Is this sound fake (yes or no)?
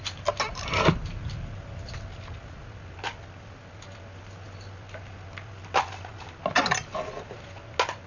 no